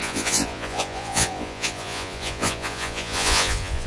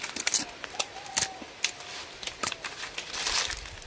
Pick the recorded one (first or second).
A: second